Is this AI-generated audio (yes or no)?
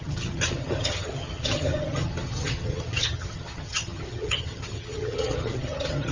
yes